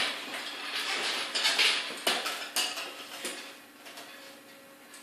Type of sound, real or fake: real